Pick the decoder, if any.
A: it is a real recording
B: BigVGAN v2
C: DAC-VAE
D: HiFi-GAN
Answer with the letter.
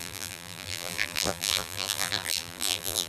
B